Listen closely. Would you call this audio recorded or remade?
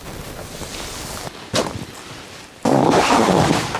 recorded